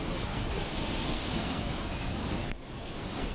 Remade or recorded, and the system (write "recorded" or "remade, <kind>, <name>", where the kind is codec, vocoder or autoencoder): remade, codec, SNAC